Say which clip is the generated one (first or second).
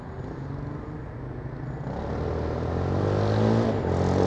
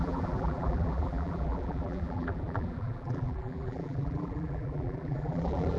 second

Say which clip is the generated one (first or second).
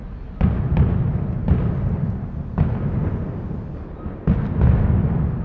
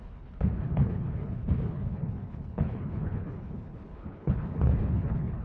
second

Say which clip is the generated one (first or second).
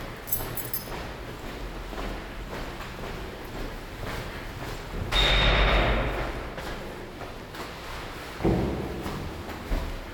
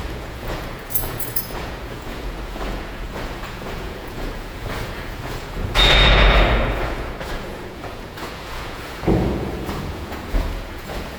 second